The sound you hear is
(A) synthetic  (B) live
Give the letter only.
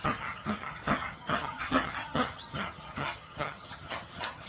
A